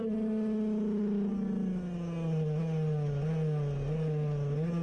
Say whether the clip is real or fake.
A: real